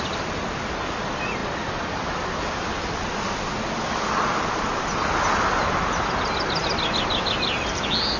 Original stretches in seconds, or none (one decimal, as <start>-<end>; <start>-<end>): 0.0-8.2